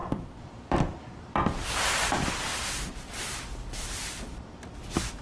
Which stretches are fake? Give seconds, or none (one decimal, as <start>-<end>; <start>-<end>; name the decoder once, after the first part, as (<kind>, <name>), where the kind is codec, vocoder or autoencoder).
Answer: 0.0-1.8 (vocoder, BigVGAN v2); 2.5-4.2